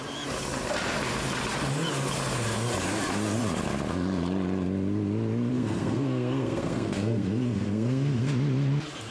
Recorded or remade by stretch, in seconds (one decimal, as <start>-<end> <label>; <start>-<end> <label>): 0.0-5.5 recorded; 5.5-8.3 remade; 8.3-9.1 recorded